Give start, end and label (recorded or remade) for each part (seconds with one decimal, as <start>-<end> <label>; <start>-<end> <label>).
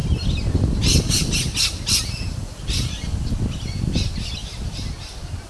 0.0-5.5 recorded